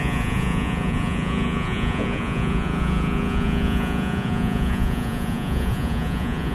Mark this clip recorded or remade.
remade